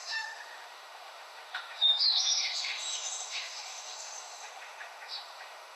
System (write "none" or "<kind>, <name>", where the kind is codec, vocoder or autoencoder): autoencoder, DAC-VAE